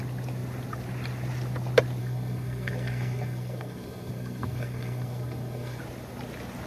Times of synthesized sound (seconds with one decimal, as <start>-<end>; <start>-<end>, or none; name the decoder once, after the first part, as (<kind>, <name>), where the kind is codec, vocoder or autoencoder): 2.0-5.8 (codec, SNAC)